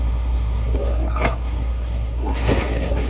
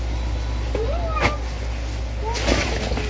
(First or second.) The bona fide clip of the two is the second